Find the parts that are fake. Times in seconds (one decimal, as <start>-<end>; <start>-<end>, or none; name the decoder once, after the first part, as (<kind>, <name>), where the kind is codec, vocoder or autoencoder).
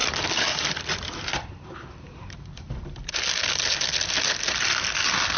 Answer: 0.0-3.1 (vocoder, BigVGAN v2)